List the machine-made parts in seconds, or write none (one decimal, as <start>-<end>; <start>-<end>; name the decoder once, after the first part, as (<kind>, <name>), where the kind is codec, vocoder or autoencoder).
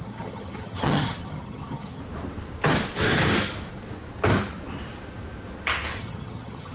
0.0-2.0 (vocoder, HiFi-GAN); 6.0-6.7